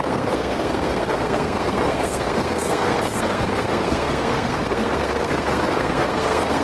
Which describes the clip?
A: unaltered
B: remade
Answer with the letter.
B